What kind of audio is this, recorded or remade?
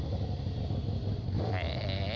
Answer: recorded